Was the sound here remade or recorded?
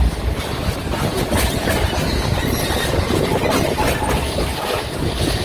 recorded